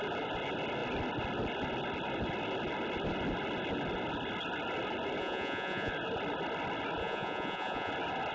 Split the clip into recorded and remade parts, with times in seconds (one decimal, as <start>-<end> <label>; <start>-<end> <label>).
0.0-5.2 recorded; 5.2-5.9 remade; 5.9-7.0 recorded; 7.0-7.9 remade; 7.9-8.3 recorded